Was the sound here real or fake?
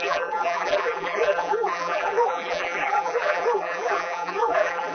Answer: fake